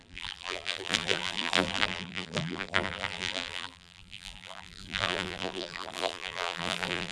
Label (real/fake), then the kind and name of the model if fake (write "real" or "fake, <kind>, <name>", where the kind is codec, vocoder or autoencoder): fake, vocoder, BigVGAN v2